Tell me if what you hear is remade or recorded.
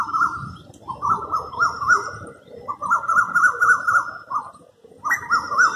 recorded